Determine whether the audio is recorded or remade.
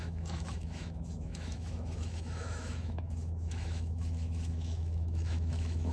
remade